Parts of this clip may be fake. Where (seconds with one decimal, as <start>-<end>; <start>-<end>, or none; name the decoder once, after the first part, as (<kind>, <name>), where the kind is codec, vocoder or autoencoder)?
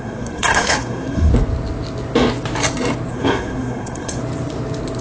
0.0-1.3 (codec, SNAC); 3.1-4.2